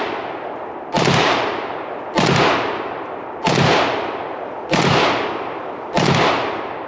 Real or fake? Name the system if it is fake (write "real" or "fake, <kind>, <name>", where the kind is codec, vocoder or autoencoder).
real